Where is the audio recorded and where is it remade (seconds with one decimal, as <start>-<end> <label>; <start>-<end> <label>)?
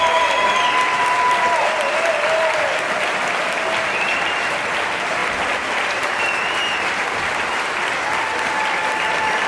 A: 0.0-9.5 recorded